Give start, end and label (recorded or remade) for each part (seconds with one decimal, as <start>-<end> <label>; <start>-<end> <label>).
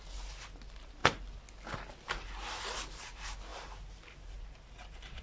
0.0-1.0 remade; 1.0-3.0 recorded; 3.0-5.2 remade